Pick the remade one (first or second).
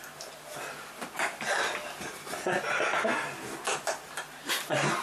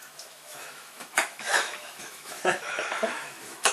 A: second